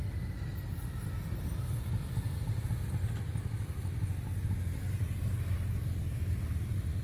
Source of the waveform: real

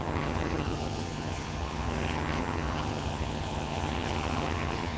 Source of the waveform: fake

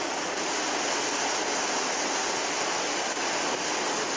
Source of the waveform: real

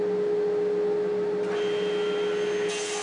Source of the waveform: real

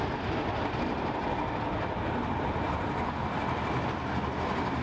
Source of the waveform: real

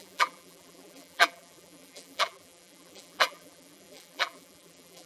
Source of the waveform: fake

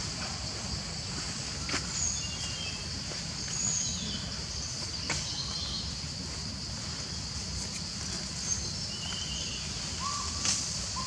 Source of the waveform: real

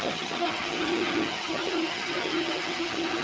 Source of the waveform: fake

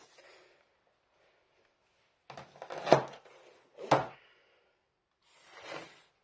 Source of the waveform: real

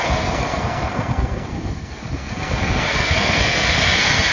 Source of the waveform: fake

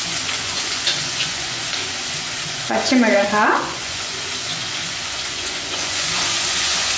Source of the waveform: fake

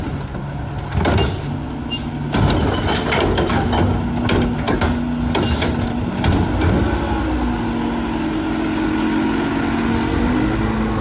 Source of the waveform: real